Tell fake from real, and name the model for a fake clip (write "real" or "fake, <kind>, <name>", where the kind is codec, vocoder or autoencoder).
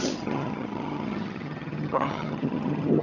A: fake, vocoder, HiFi-GAN